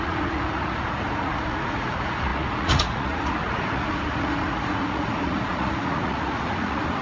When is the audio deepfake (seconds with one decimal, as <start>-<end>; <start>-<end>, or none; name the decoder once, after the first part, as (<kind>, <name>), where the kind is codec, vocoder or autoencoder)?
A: 0.0-7.0 (vocoder, Vocos)